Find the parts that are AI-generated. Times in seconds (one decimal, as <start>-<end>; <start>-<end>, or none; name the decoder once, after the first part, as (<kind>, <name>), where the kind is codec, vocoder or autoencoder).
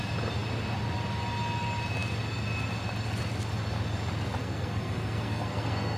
4.4-6.0 (codec, SNAC)